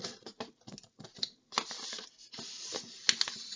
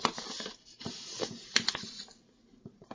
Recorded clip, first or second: first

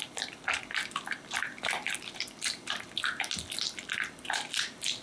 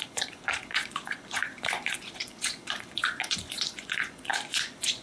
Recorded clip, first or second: first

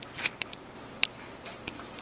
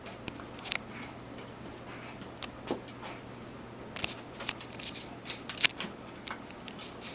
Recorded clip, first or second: second